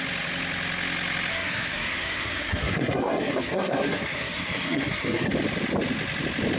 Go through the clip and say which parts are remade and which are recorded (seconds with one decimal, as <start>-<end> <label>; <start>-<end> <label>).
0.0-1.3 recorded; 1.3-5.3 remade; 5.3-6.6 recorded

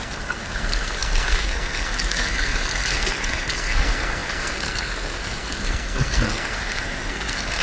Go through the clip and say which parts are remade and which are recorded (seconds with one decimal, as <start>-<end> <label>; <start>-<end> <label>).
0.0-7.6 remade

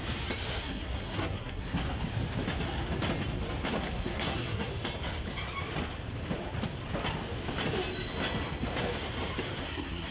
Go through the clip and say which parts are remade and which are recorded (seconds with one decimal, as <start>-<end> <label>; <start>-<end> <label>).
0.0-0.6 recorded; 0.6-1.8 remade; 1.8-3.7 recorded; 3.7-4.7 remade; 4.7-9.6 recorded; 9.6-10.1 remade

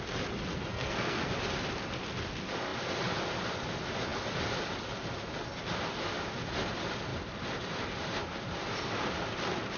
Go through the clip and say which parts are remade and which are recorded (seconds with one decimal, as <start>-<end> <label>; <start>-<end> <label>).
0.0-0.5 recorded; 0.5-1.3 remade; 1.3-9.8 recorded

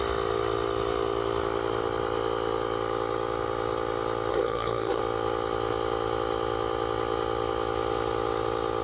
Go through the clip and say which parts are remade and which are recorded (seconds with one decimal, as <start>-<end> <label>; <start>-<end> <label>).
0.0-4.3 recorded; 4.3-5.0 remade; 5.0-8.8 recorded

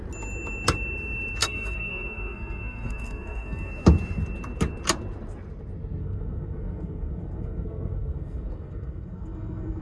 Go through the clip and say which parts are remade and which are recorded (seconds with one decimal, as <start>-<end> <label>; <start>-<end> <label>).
0.0-1.4 recorded; 1.4-3.7 remade; 3.7-6.0 recorded; 6.0-9.8 remade

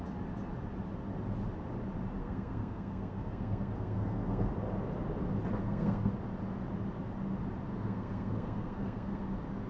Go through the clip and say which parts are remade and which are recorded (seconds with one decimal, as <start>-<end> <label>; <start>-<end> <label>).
0.0-2.2 recorded; 2.2-4.5 remade; 4.5-5.6 recorded; 5.6-6.1 remade; 6.1-7.7 recorded; 7.7-9.2 remade; 9.2-9.7 recorded

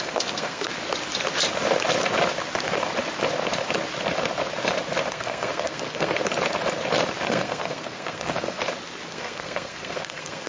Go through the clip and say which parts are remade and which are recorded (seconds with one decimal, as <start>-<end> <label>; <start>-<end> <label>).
0.0-0.7 remade; 0.7-5.1 recorded; 5.1-6.2 remade; 6.2-7.3 recorded; 7.3-8.6 remade; 8.6-9.1 recorded; 9.1-10.5 remade